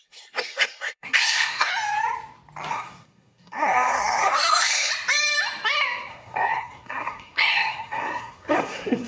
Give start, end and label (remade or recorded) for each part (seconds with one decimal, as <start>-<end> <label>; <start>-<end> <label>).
0.0-1.7 remade; 1.7-2.7 recorded; 2.7-4.9 remade; 4.9-6.1 recorded; 6.1-9.1 remade